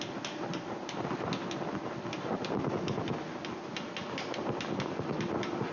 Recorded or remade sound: recorded